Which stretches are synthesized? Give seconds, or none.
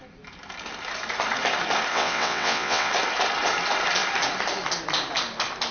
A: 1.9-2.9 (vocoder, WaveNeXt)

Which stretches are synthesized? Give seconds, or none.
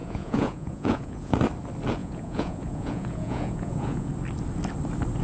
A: 0.0-1.3 (vocoder, Vocos); 2.0-4.1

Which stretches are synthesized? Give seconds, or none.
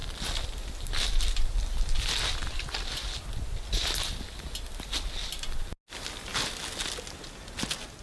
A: none